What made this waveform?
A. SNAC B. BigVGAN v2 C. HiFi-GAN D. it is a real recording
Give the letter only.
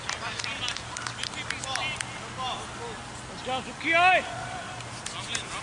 D